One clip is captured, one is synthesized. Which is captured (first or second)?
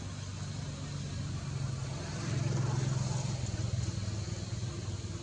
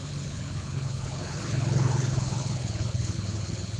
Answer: first